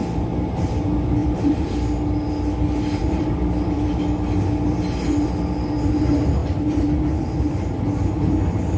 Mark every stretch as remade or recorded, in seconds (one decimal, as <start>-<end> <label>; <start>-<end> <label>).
0.0-0.7 remade; 0.7-1.2 recorded; 1.2-1.7 remade; 1.7-3.0 recorded; 3.0-3.8 remade; 3.8-6.4 recorded; 6.4-6.9 remade; 6.9-8.8 recorded

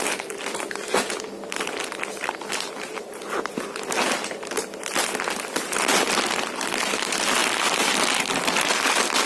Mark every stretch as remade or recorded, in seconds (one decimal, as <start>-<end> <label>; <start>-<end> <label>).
0.0-9.3 recorded